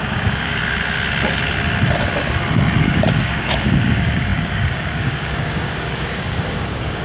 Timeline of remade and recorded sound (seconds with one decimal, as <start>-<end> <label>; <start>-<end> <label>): 0.0-0.6 remade; 0.6-2.8 recorded; 2.8-7.0 remade